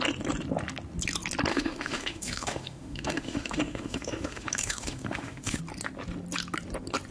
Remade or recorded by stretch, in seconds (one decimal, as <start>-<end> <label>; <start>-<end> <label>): 0.0-1.5 recorded; 1.5-5.6 remade; 5.6-7.1 recorded